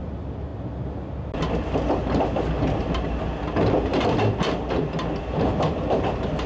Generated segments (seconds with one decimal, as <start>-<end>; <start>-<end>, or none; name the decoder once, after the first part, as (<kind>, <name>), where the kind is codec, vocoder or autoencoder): none